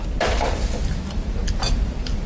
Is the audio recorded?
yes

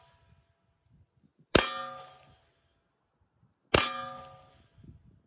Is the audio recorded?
yes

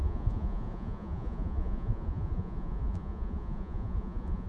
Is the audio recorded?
no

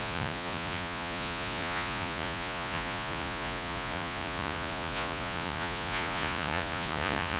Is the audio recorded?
no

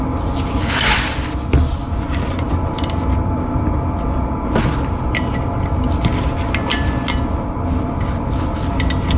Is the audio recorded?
yes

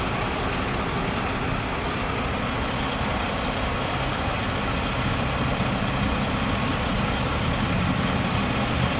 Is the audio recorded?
yes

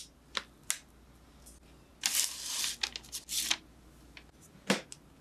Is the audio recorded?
yes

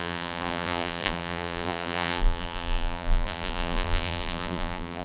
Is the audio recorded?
no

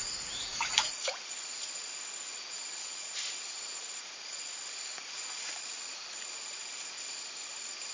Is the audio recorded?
no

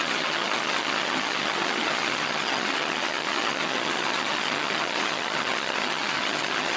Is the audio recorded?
no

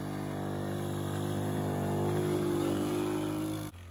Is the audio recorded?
yes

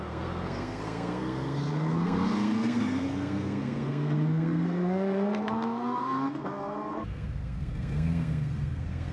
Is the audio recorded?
no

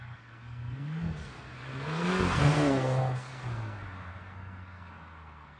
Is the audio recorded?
no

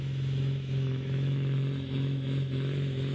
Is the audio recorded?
no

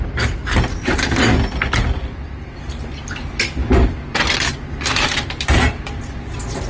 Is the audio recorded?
yes